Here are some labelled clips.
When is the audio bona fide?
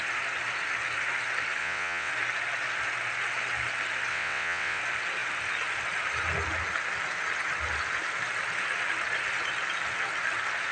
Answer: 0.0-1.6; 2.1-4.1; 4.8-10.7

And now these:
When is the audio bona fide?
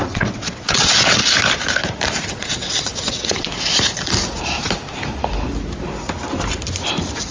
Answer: 1.2-2.3; 3.5-7.3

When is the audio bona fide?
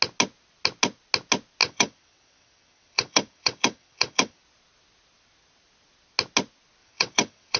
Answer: 0.0-1.6; 4.4-6.8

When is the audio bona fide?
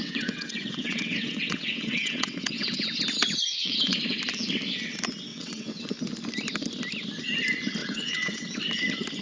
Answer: 3.0-3.5; 4.2-5.3; 5.9-7.8; 8.6-9.2